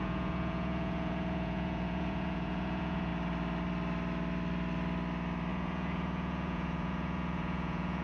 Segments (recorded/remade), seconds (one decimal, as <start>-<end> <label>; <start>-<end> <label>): 0.0-3.1 remade; 3.1-5.5 recorded; 5.5-8.0 remade